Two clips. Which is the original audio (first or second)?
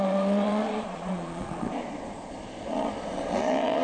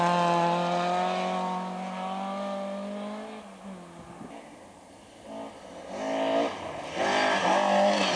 second